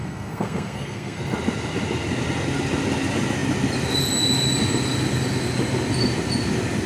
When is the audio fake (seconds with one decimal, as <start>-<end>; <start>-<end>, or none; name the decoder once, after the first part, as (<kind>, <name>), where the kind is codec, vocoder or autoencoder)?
0.0-1.2 (codec, SNAC)